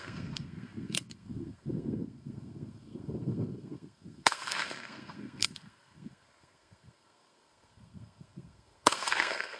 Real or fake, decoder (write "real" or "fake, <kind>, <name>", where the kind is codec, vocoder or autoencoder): fake, codec, SNAC